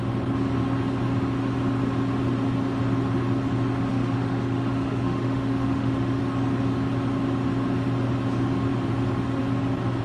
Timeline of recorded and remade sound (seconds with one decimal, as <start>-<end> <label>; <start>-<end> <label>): 0.0-3.9 recorded; 3.9-6.2 remade; 6.2-10.0 recorded